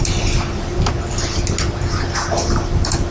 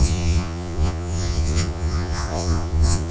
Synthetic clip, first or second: second